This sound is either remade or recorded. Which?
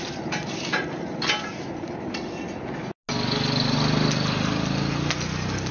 recorded